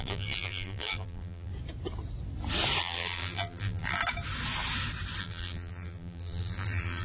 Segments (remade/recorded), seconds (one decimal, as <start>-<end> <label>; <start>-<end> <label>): 0.0-1.5 remade; 1.5-2.8 recorded; 2.8-4.0 remade; 4.0-5.2 recorded; 5.2-7.0 remade